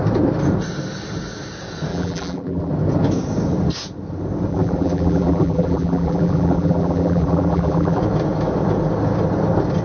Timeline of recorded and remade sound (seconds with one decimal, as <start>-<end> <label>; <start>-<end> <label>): 0.0-1.9 recorded; 1.9-2.7 remade; 2.7-4.5 recorded; 4.5-8.0 remade; 8.0-9.8 recorded